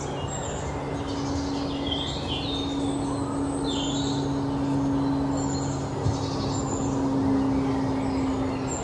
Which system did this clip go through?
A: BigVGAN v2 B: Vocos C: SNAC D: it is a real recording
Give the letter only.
D